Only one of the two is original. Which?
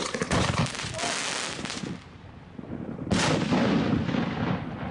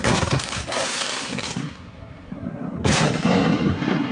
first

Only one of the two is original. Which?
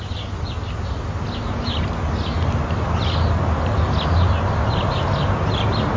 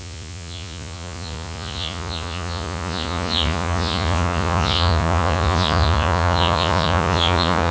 first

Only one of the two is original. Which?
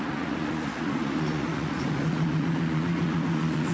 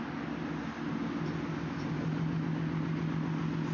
second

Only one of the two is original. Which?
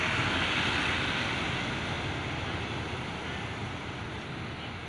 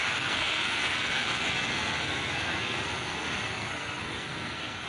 first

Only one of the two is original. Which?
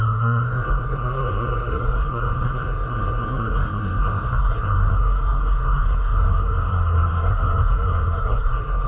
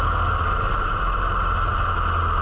second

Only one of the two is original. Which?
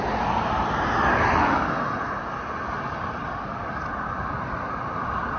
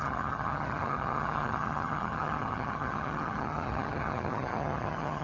first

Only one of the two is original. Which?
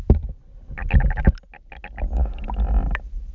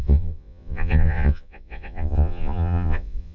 first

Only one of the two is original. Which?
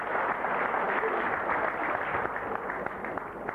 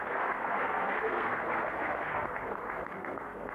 first